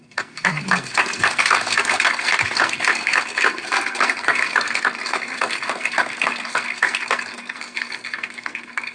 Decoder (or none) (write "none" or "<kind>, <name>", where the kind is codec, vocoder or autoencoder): codec, SNAC